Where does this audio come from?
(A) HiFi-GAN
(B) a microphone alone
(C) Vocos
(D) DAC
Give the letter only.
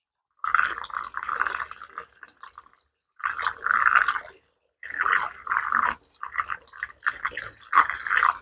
B